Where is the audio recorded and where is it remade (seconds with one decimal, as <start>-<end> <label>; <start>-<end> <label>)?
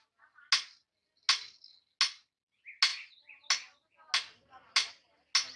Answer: 0.0-5.6 recorded